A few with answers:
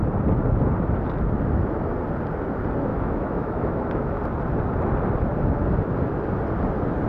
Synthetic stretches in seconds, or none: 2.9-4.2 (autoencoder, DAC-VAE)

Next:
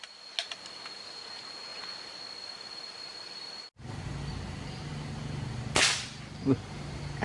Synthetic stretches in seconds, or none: none